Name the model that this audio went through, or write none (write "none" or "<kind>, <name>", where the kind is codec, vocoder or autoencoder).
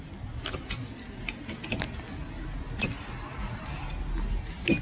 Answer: none